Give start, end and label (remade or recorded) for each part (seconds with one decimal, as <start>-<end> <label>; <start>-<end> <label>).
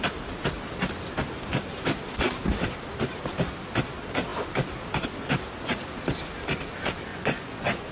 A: 0.0-7.1 recorded; 7.1-7.9 remade